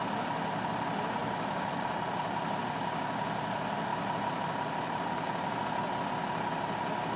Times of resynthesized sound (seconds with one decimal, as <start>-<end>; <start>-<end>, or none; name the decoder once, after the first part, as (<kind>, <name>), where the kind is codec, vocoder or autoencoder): 1.2-2.6 (vocoder, BigVGAN v2); 3.9-5.6